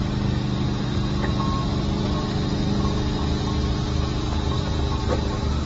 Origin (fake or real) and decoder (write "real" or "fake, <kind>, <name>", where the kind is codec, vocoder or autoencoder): real